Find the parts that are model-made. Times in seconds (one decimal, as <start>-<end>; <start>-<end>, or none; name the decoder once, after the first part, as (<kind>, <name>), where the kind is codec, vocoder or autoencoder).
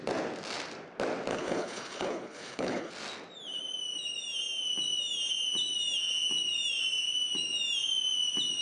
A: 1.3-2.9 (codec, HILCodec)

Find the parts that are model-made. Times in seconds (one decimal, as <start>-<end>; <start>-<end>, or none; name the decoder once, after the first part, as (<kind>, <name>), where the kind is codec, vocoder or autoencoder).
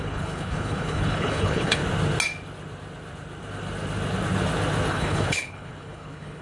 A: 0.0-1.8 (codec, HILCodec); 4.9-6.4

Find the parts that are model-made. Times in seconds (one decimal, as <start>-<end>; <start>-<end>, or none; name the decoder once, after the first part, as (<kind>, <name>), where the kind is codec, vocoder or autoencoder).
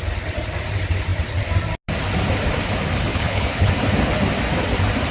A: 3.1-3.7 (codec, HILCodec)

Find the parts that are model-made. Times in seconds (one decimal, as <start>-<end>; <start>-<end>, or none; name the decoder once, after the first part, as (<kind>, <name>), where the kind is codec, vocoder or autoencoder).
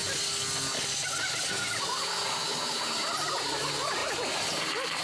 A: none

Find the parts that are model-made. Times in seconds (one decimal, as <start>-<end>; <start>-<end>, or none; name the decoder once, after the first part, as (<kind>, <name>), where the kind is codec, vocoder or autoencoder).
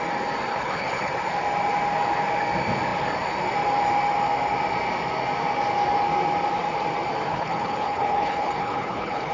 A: 0.5-1.1 (codec, HILCodec); 7.3-9.3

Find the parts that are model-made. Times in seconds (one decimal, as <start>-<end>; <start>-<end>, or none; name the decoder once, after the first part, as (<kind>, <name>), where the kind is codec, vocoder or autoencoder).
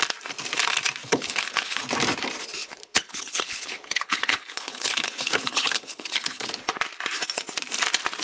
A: 1.0-1.8 (codec, HILCodec); 2.6-6.5